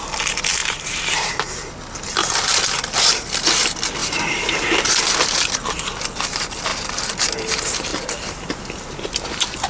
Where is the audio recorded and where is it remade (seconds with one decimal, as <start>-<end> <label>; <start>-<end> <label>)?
0.0-0.6 recorded; 0.6-1.3 remade; 1.3-4.0 recorded; 4.0-6.0 remade; 6.0-7.9 recorded; 7.9-8.6 remade; 8.6-9.7 recorded